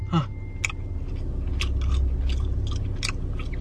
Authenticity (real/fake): real